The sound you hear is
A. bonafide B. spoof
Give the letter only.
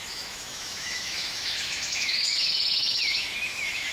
B